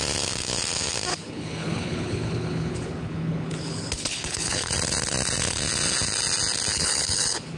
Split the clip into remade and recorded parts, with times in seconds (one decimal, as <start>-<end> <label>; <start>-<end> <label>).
0.0-1.1 recorded; 1.1-4.7 remade; 4.7-6.7 recorded; 6.7-7.6 remade